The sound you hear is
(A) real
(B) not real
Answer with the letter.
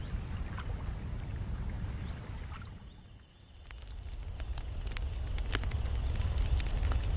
A